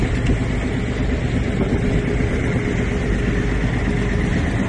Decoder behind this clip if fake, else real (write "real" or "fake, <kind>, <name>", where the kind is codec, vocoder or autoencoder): real